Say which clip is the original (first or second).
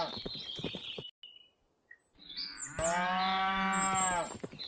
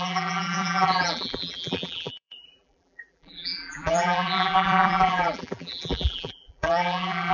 first